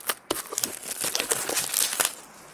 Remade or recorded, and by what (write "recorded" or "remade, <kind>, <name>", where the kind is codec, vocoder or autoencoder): recorded